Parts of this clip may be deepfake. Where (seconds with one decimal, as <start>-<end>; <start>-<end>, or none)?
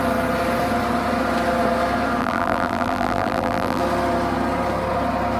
2.2-3.8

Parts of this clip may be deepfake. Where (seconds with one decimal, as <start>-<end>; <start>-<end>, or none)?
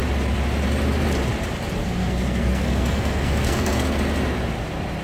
1.8-4.0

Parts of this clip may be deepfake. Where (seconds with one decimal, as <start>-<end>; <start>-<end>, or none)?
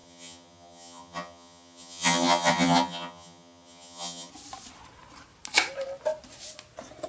0.0-4.3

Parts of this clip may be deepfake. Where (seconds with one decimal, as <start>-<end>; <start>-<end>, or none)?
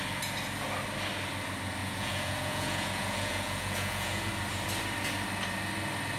1.8-4.3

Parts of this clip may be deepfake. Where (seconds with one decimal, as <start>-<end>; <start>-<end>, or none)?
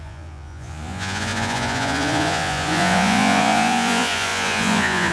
0.0-5.1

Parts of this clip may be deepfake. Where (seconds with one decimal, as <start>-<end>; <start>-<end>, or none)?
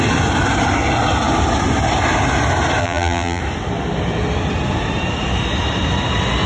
2.8-3.4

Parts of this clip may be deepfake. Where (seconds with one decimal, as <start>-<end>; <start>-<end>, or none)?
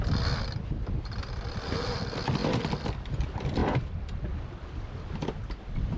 none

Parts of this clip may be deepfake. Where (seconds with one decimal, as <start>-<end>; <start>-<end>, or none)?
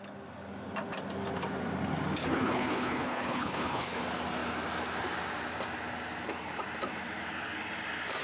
2.2-4.0